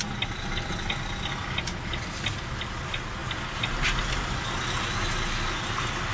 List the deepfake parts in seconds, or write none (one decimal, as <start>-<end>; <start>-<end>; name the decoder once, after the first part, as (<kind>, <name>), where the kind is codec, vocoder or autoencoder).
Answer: none